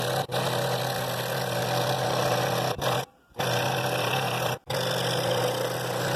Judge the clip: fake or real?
real